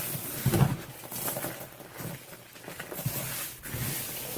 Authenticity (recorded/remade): recorded